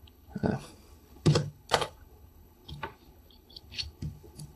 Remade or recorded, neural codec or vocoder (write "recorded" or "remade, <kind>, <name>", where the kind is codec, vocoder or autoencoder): remade, codec, HILCodec